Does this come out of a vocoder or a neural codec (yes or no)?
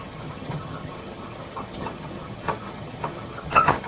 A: yes